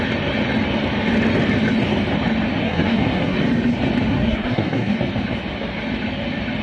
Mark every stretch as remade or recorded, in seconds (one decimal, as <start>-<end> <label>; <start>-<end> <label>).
0.0-2.6 recorded; 2.6-3.4 remade; 3.4-4.1 recorded; 4.1-5.0 remade; 5.0-6.6 recorded

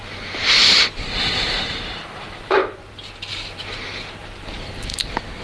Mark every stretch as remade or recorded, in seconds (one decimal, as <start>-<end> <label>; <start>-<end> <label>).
0.0-2.6 remade; 2.6-3.3 recorded; 3.3-4.9 remade; 4.9-5.4 recorded

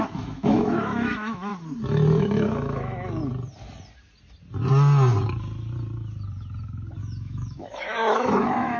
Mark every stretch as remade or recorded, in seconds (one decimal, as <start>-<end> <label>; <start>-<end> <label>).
0.0-1.5 remade; 1.5-2.2 recorded; 2.2-3.2 remade; 3.2-7.0 recorded; 7.0-8.8 remade

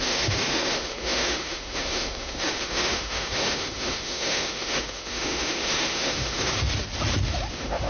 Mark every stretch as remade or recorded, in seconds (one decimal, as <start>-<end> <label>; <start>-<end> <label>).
0.0-6.5 remade; 6.5-7.5 recorded; 7.5-7.9 remade

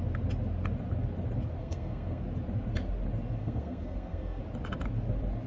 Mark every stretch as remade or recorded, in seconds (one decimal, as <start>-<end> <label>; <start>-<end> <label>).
0.0-1.6 recorded; 1.6-2.2 remade; 2.2-3.4 recorded; 3.4-4.4 remade; 4.4-5.5 recorded